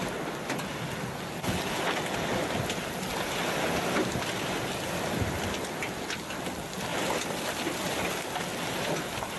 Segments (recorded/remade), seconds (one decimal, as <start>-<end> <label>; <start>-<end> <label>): 0.0-9.4 recorded